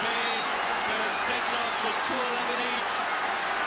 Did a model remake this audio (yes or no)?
yes